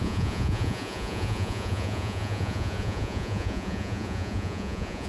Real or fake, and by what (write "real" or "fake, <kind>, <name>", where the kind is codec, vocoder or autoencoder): fake, vocoder, Vocos